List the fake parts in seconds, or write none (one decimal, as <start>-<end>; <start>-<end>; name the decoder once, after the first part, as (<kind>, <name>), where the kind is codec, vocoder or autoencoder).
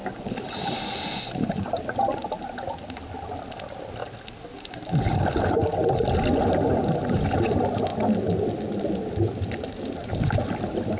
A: none